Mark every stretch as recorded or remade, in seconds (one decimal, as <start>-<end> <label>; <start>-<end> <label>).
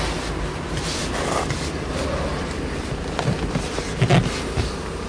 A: 0.0-5.1 recorded